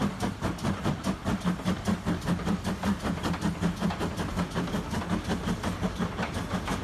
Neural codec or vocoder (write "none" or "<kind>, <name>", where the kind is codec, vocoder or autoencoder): none